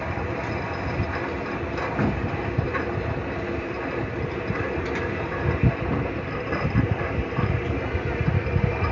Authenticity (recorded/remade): recorded